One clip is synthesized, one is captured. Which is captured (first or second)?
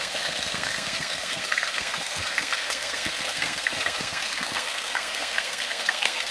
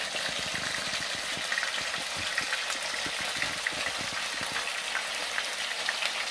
second